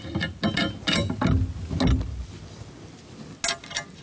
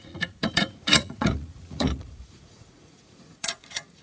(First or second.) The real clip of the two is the first